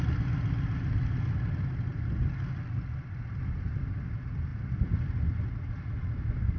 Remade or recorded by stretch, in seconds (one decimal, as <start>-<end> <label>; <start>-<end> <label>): 0.0-1.9 recorded; 1.9-3.9 remade; 3.9-6.6 recorded